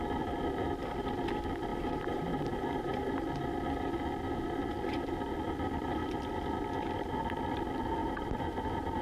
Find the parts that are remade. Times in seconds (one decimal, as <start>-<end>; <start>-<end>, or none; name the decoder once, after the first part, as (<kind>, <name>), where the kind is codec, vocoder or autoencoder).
1.7-3.1 (vocoder, BigVGAN v2); 8.0-9.0